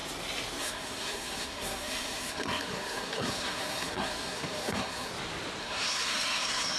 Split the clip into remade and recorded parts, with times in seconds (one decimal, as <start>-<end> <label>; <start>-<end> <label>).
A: 0.0-0.6 recorded; 0.6-5.1 remade; 5.1-5.6 recorded; 5.6-6.8 remade